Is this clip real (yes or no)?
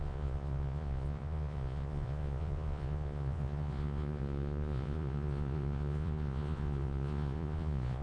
no